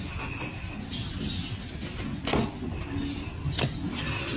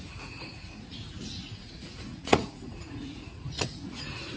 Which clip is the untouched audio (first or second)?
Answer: first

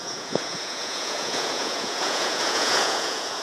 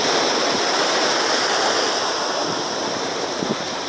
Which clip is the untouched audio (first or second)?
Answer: second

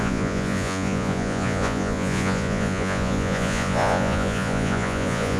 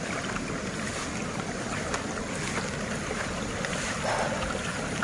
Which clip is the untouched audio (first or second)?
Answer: second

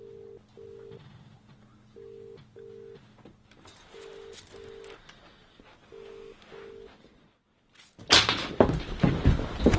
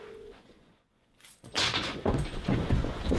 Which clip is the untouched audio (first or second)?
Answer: first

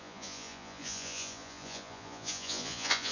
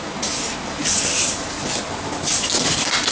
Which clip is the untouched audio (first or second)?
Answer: second